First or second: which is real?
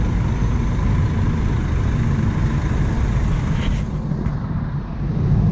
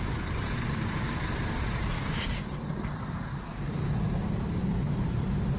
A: first